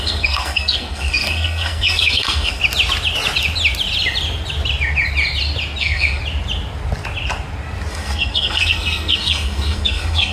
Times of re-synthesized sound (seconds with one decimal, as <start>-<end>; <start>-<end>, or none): 0.0-2.6; 5.8-6.2; 7.9-10.3